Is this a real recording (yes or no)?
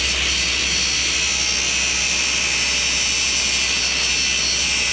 yes